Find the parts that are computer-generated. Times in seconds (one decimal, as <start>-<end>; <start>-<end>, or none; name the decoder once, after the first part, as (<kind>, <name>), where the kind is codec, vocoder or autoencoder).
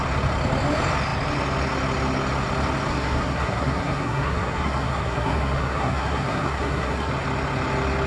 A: 2.9-7.1 (codec, SNAC)